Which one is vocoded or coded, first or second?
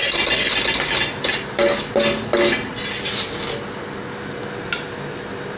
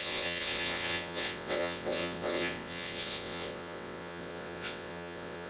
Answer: second